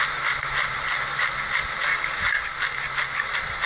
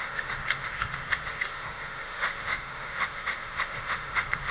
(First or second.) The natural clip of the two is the first